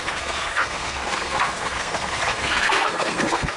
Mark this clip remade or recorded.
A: remade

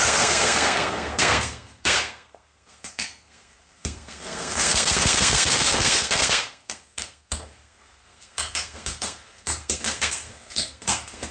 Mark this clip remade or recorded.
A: remade